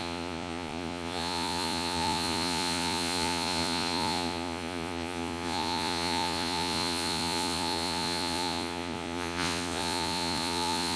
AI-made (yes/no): yes